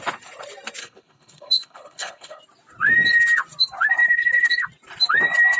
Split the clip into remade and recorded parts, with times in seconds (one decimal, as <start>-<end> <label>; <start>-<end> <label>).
0.0-0.8 recorded; 0.8-2.4 remade; 2.4-5.6 recorded